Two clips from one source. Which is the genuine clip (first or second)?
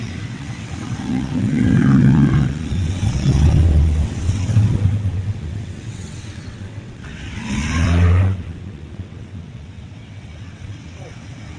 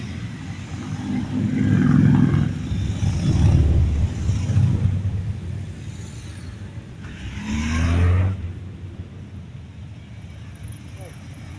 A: second